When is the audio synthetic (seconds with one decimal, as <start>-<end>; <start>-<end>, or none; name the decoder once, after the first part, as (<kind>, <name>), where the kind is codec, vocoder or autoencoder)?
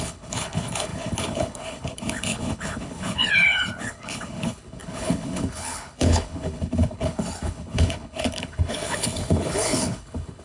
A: 0.0-10.4 (codec, HILCodec)